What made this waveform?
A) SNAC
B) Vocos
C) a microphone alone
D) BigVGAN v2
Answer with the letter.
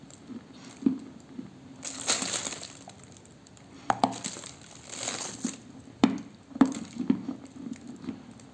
C